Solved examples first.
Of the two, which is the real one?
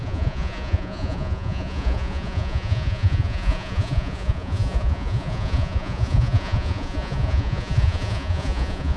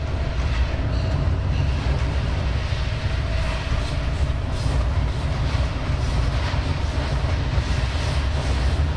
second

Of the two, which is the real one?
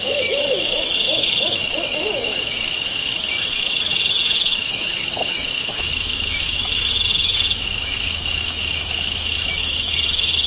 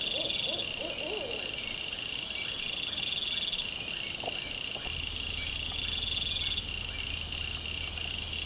second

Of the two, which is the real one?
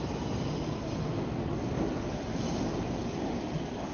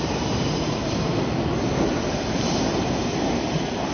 first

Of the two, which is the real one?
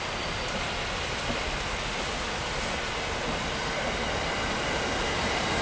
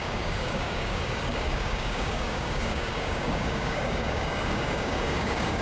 first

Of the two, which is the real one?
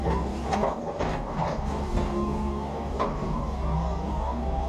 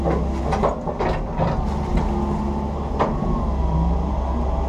second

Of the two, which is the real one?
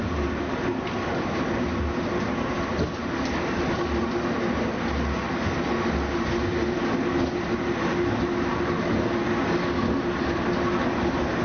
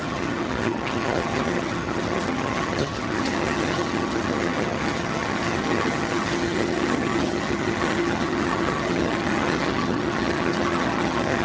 first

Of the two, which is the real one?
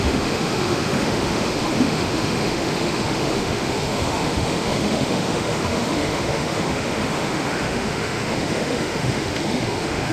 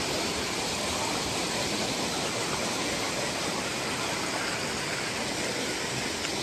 second